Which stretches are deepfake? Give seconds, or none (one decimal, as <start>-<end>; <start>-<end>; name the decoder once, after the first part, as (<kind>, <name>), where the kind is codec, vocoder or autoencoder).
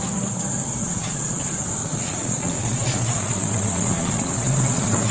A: 0.8-1.4 (vocoder, Vocos); 1.8-5.1